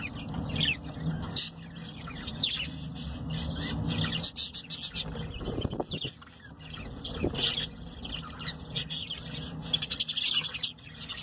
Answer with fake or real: real